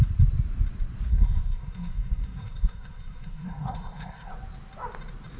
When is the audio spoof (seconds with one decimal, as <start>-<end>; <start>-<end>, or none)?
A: 1.1-4.3